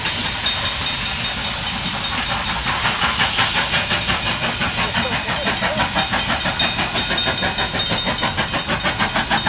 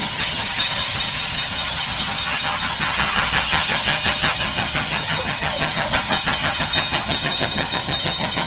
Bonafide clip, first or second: first